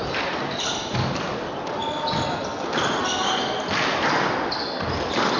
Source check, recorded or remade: recorded